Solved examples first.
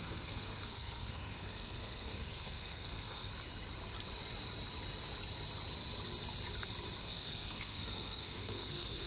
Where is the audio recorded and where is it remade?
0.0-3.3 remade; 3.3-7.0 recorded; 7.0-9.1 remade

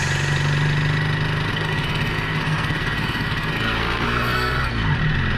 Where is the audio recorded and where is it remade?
0.0-1.5 recorded; 1.5-4.7 remade; 4.7-5.4 recorded

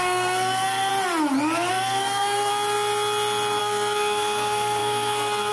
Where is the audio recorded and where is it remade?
0.0-0.9 remade; 0.9-1.7 recorded; 1.7-2.5 remade; 2.5-3.6 recorded; 3.6-5.5 remade

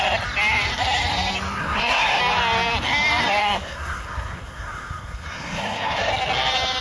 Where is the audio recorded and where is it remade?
0.0-1.6 recorded; 1.6-2.2 remade; 2.2-3.4 recorded; 3.4-6.1 remade; 6.1-6.8 recorded

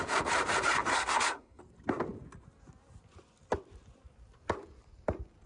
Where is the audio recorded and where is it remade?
0.0-0.9 recorded; 0.9-1.6 remade; 1.6-5.5 recorded

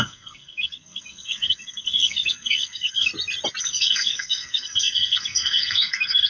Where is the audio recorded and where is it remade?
0.0-3.1 remade; 3.1-3.6 recorded; 3.6-6.3 remade

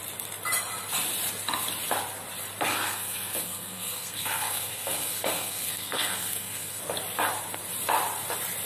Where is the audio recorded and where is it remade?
0.0-2.7 recorded; 2.7-6.8 remade; 6.8-8.7 recorded